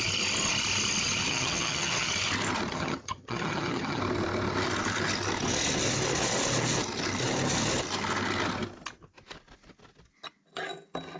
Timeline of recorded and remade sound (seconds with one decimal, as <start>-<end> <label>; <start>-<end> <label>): 0.0-1.3 recorded; 1.3-2.1 remade; 2.1-2.7 recorded; 2.7-4.0 remade; 4.0-11.2 recorded